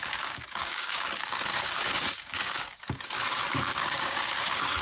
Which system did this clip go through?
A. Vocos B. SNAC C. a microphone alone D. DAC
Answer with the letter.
D